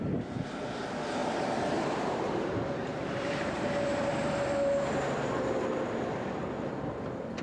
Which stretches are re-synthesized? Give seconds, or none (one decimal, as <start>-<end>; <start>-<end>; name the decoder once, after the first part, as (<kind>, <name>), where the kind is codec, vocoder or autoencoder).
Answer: 1.2-5.6 (vocoder, BigVGAN v2)